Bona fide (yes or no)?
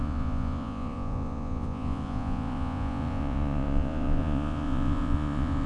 no